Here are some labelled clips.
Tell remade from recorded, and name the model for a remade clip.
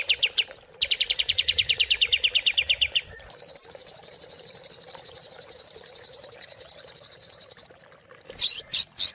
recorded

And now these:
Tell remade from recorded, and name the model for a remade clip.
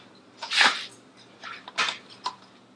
recorded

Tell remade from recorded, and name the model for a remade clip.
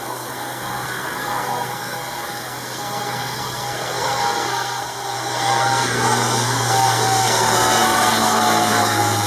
remade, codec, SNAC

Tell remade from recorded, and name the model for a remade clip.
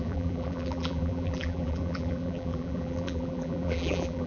remade, vocoder, BigVGAN v2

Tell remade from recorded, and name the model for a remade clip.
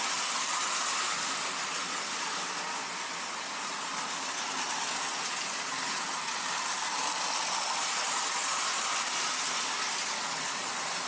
recorded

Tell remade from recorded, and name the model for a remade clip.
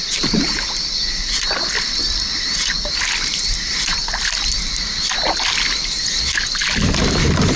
recorded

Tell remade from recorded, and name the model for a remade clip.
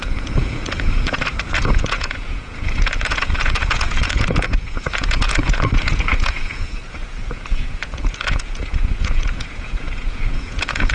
remade, vocoder, Vocos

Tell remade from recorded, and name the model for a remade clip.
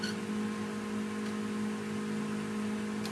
recorded